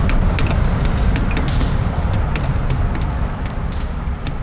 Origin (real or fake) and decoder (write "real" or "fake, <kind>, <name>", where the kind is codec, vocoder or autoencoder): real